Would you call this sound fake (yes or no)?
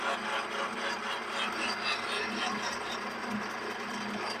no